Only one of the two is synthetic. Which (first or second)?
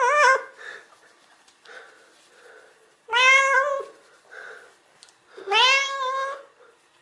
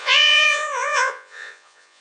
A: second